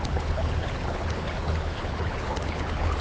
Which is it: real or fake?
fake